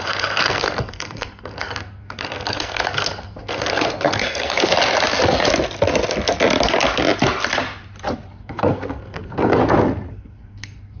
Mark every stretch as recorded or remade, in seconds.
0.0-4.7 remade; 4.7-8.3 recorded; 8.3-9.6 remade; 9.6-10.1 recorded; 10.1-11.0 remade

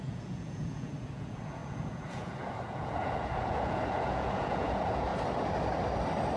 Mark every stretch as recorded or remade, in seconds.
0.0-5.1 remade; 5.1-6.4 recorded

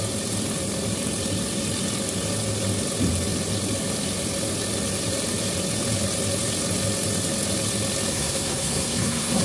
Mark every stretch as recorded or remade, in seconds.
0.0-8.1 recorded; 8.1-9.4 remade

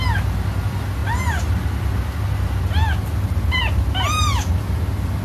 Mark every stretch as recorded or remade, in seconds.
0.0-5.2 recorded